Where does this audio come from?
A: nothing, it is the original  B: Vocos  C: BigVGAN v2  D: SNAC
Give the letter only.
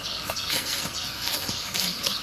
D